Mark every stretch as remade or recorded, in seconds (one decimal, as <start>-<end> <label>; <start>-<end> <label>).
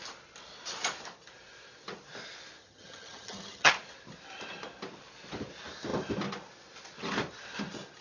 0.0-2.6 recorded; 2.6-3.7 remade; 3.7-8.0 recorded